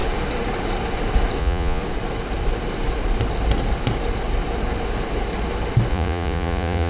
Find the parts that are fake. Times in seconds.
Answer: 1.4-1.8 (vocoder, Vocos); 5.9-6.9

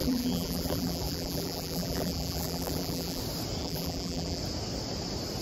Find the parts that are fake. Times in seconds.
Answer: 0.0-3.2 (vocoder, BigVGAN v2); 3.6-4.4

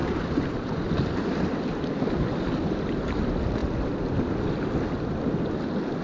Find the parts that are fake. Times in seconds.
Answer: 0.0-0.9 (vocoder, BigVGAN v2)

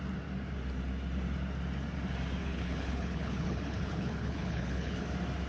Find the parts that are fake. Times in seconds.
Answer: 2.4-5.0 (codec, HILCodec)

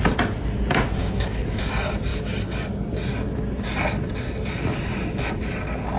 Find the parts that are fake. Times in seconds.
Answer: 1.0-1.6 (codec, DAC)

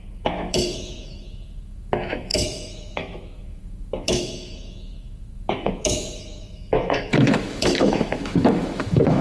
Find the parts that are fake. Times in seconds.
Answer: 0.0-9.2 (autoencoder, DAC-VAE)

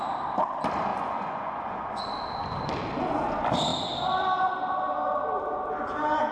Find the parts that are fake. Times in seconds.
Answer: 0.9-2.1 (vocoder, Vocos)

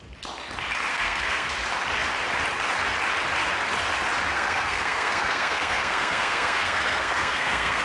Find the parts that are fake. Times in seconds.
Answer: 0.9-1.5 (codec, SNAC); 4.3-7.8